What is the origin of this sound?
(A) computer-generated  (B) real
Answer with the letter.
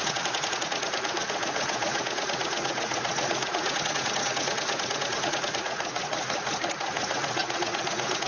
A